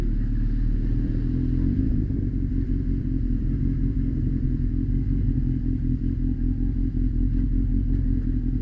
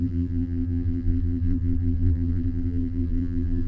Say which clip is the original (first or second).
first